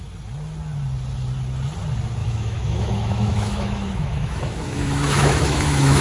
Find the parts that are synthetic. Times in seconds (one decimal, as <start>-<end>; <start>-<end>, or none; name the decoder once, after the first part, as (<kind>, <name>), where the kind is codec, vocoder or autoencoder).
2.2-6.0 (autoencoder, DAC-VAE)